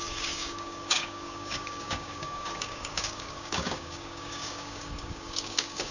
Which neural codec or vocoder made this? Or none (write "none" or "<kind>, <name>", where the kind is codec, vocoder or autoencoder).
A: codec, DAC